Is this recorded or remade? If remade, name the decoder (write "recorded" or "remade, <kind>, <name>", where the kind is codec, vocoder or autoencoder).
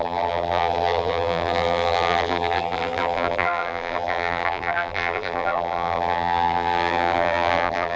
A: remade, vocoder, BigVGAN v2